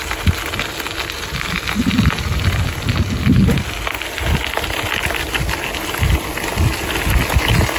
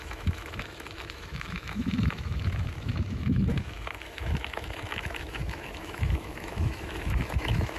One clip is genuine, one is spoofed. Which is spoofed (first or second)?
second